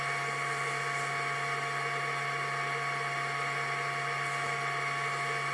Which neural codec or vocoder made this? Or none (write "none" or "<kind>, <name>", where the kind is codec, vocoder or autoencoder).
none